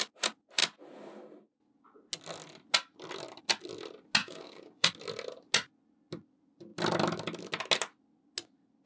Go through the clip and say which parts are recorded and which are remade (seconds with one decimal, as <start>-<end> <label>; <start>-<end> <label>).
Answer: 0.0-4.2 recorded; 4.2-4.9 remade; 4.9-8.9 recorded